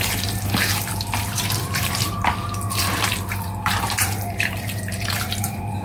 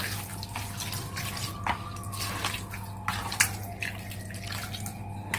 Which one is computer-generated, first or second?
first